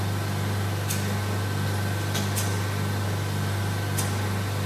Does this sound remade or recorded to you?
recorded